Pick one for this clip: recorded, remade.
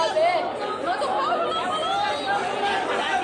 recorded